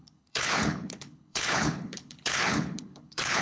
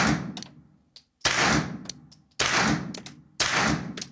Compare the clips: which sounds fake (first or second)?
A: first